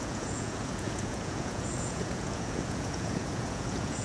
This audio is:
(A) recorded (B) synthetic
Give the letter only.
B